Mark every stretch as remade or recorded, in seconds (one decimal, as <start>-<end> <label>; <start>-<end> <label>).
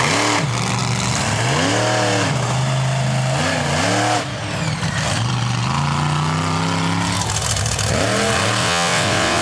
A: 0.0-8.6 recorded; 8.6-9.4 remade